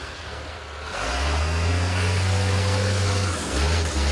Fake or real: fake